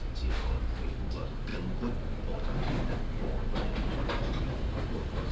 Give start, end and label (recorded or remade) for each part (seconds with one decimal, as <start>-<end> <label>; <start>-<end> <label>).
0.0-1.5 remade; 1.5-4.2 recorded; 4.2-5.3 remade